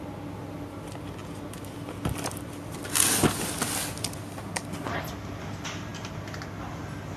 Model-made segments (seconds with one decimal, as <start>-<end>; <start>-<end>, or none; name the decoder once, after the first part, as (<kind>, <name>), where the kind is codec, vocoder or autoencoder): none